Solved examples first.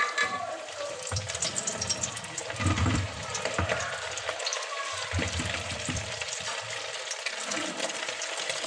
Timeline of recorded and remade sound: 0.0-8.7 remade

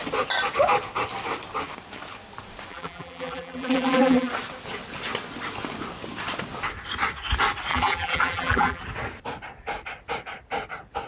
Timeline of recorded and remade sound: 0.0-2.7 recorded; 2.7-4.3 remade; 4.3-7.7 recorded; 7.7-8.8 remade; 8.8-11.1 recorded

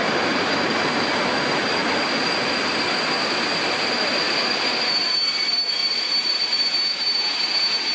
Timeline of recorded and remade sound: 0.0-1.8 recorded; 1.8-2.6 remade; 2.6-5.8 recorded; 5.8-6.9 remade; 6.9-7.9 recorded

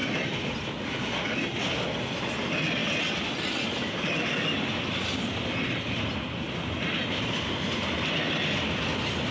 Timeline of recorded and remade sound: 0.0-9.3 recorded